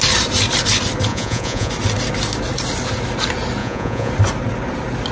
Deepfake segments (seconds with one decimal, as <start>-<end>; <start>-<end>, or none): 1.1-1.7; 3.6-4.1